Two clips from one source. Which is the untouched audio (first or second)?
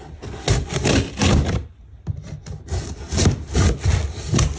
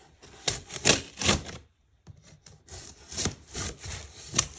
first